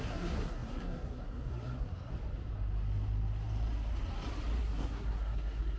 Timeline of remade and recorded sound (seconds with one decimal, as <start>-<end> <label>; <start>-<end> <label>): 0.0-2.1 remade; 2.1-4.6 recorded; 4.6-5.8 remade